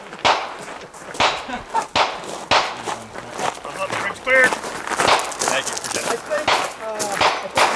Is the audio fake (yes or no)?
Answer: no